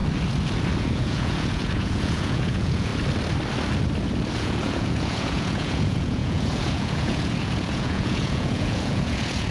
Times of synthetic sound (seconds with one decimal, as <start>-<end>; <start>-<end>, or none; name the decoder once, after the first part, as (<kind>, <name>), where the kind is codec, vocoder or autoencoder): 0.8-2.9 (vocoder, Vocos); 4.4-9.5